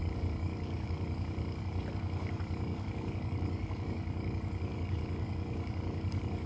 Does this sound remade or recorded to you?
remade